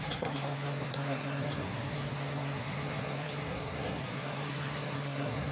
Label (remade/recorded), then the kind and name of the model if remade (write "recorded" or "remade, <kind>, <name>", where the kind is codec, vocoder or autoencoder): remade, codec, SNAC